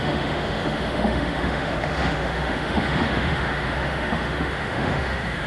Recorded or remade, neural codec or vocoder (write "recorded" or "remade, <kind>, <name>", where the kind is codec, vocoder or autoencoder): remade, autoencoder, DAC-VAE